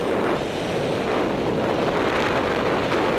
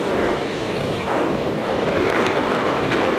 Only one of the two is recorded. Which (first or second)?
first